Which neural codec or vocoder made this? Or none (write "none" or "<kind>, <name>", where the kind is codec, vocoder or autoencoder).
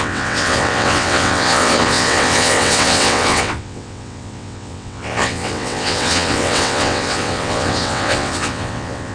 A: vocoder, WaveNeXt